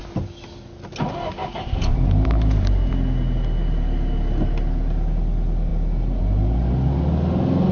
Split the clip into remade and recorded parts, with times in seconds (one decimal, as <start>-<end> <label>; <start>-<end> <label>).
0.0-1.4 recorded; 1.4-2.9 remade; 2.9-7.7 recorded